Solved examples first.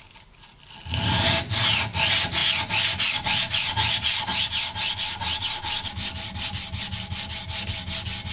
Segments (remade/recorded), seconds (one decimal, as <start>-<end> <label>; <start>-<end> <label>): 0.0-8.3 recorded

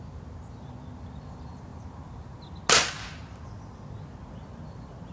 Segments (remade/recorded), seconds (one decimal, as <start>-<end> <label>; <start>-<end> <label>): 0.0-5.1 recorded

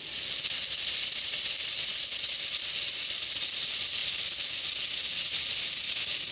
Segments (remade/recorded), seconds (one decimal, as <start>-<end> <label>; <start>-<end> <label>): 0.0-6.3 recorded

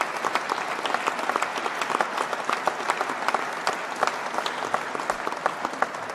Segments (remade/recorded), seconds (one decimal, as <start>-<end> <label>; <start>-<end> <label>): 0.0-6.1 recorded